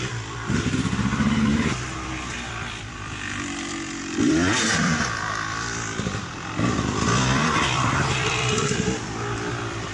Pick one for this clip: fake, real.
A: fake